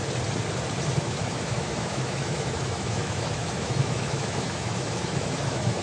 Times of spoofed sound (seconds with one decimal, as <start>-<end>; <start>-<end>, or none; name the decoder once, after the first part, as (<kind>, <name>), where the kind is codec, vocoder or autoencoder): 1.0-5.8 (autoencoder, DAC-VAE)